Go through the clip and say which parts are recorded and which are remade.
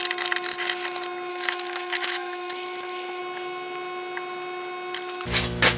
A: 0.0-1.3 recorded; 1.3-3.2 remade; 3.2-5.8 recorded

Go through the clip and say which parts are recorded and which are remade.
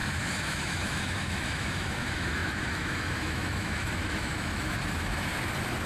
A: 0.0-5.3 remade; 5.3-5.9 recorded